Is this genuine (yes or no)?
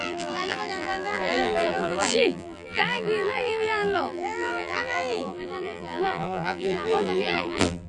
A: no